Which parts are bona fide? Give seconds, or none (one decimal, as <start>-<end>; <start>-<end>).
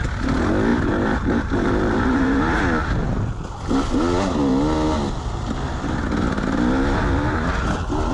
0.0-0.7; 2.6-8.1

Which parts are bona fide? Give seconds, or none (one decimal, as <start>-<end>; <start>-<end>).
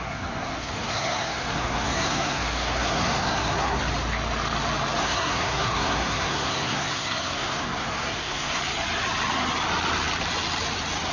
3.8-5.0; 8.6-11.1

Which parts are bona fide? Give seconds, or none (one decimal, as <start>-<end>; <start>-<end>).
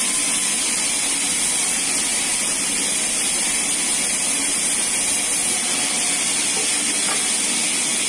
0.0-8.1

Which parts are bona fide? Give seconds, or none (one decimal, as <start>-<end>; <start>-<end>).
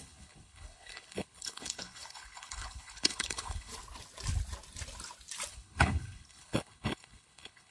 3.7-5.5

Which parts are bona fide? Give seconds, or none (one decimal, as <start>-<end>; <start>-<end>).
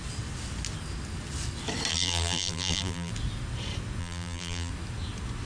0.0-1.9; 3.1-4.0; 4.7-5.5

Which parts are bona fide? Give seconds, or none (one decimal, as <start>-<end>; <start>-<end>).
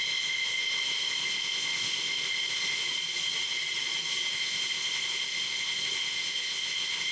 2.8-4.3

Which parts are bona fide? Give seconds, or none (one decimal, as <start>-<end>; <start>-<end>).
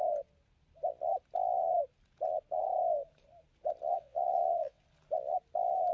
0.0-3.9; 4.8-5.9